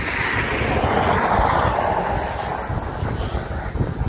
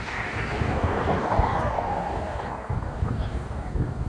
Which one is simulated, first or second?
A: second